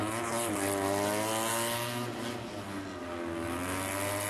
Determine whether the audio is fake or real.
real